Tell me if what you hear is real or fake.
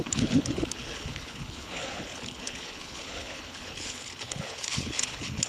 fake